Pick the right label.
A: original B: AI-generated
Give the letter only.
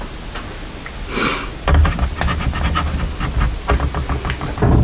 A